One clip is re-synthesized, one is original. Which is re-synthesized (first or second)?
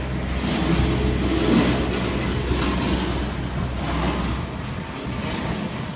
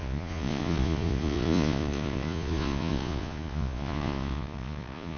second